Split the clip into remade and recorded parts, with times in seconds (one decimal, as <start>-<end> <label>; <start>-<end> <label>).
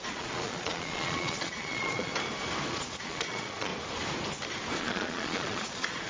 0.0-2.1 remade; 2.1-2.7 recorded; 2.7-3.7 remade; 3.7-4.8 recorded; 4.8-6.1 remade